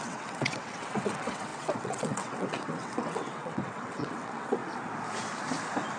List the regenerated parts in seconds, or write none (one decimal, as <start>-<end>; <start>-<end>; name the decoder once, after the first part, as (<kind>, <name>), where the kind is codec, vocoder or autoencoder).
0.0-4.6 (vocoder, WaveNeXt)